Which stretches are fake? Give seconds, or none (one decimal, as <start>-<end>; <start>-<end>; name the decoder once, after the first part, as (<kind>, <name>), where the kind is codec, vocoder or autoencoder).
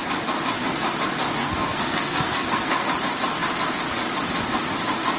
1.4-2.9 (codec, SNAC)